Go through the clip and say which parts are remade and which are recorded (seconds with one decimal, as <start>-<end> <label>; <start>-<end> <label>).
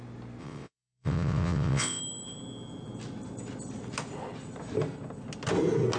0.0-0.4 recorded; 0.4-2.0 remade; 2.0-6.0 recorded